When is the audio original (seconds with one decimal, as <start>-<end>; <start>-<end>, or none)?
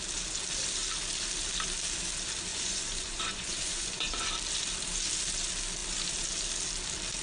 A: 0.0-2.5; 4.3-7.2